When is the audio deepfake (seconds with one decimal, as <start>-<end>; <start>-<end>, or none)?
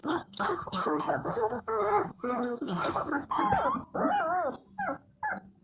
0.0-3.4